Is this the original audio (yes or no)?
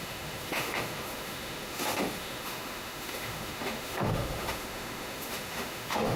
no